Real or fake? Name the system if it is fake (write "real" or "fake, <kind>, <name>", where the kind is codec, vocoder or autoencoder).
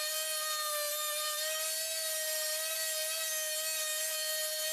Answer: real